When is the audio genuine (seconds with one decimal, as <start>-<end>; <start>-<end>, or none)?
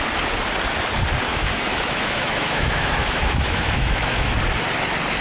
0.0-1.3; 4.3-5.2